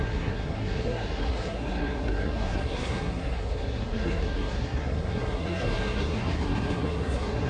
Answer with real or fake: fake